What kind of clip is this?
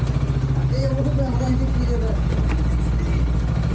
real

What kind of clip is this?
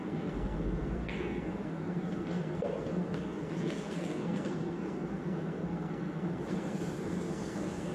fake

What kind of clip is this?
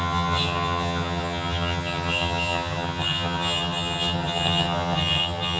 fake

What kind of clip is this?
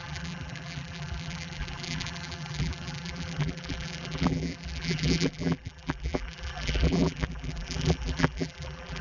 fake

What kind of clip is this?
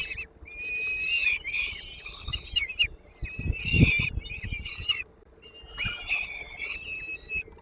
real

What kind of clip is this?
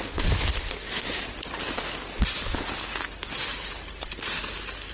real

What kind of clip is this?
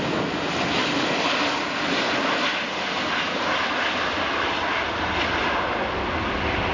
real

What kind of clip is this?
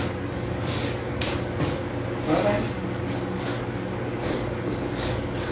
fake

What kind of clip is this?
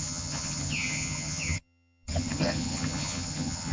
fake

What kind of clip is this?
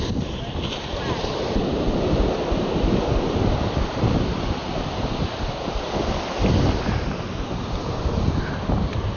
real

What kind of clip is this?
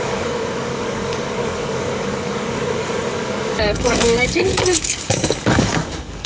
fake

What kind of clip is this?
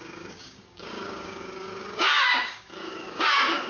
fake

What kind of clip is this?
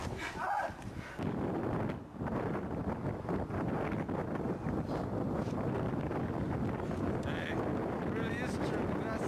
real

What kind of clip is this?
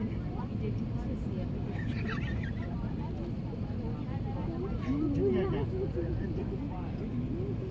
real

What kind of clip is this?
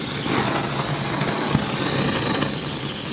real